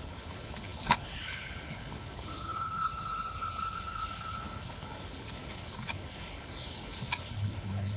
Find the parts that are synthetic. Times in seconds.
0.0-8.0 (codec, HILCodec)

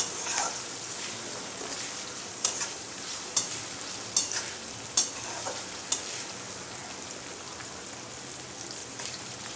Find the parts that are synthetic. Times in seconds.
2.3-3.6 (vocoder, BigVGAN v2); 8.8-9.6